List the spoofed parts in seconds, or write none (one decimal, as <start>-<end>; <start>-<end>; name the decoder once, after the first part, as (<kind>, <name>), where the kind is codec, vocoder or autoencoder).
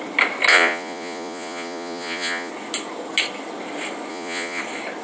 0.5-2.5 (vocoder, Vocos); 4.1-4.6